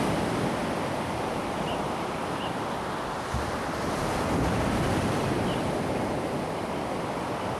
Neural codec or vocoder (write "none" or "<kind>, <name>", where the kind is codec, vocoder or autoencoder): none